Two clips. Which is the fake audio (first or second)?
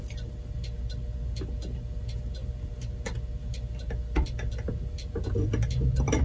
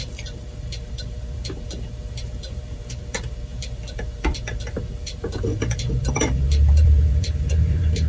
second